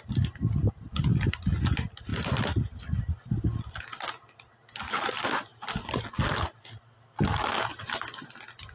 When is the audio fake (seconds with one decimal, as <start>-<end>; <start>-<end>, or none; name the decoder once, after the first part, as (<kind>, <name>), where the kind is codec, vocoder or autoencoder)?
none